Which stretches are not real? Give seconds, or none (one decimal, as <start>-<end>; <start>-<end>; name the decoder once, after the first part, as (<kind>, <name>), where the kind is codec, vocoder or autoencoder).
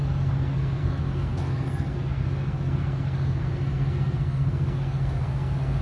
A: 0.0-5.8 (codec, SNAC)